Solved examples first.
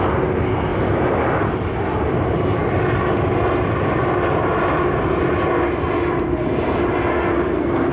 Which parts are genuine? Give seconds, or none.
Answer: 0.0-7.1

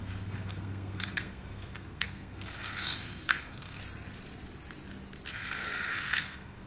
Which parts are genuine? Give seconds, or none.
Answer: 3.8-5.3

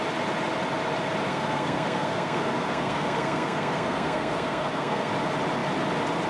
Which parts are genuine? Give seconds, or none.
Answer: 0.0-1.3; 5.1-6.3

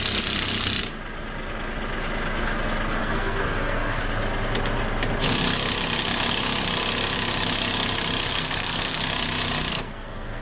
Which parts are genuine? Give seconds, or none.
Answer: 0.0-3.0; 4.0-8.2; 9.1-9.7